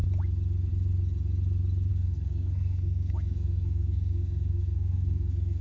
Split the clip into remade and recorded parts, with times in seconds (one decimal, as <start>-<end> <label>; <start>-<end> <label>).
0.0-1.9 recorded; 1.9-5.6 remade